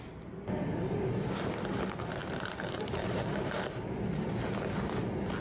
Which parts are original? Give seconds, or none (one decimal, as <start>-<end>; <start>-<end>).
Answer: 0.0-2.2; 4.3-5.4